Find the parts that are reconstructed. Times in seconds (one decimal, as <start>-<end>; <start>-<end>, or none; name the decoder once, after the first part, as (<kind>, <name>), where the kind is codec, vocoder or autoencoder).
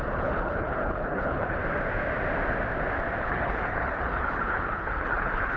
0.0-1.6 (codec, HILCodec); 3.2-5.6